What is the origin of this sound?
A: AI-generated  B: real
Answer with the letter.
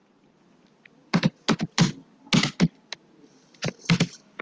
B